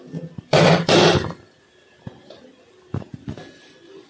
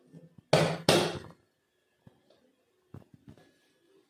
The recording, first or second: second